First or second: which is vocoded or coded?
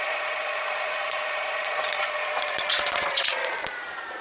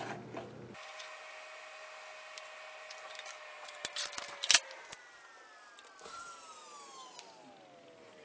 first